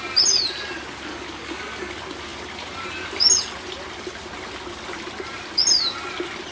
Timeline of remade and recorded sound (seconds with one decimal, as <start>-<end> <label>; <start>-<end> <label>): 0.0-1.1 recorded; 1.1-1.9 remade; 1.9-6.5 recorded